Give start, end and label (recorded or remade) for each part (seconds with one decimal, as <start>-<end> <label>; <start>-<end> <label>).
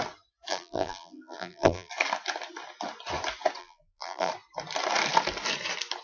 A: 0.0-0.5 recorded; 0.5-1.9 remade; 1.9-3.6 recorded; 3.6-4.3 remade; 4.3-6.0 recorded